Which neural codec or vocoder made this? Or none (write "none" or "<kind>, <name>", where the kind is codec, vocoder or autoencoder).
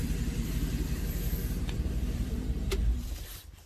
vocoder, BigVGAN v2